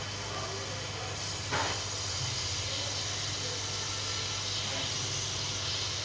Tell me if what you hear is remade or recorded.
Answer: recorded